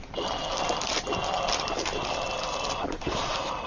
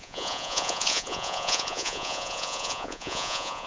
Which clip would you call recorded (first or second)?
first